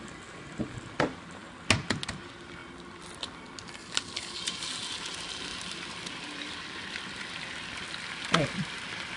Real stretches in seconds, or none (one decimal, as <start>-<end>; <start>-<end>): 0.0-5.5